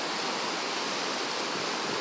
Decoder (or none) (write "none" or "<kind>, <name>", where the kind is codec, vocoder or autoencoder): none